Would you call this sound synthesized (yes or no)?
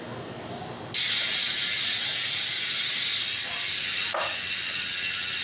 no